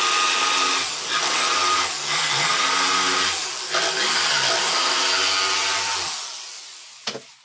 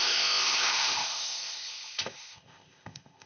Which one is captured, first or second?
first